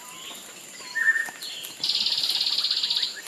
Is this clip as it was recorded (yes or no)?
yes